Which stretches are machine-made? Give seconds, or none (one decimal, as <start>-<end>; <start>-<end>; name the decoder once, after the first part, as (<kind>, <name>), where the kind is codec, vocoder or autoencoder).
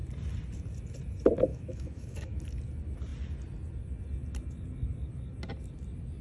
1.5-2.4 (autoencoder, DAC-VAE)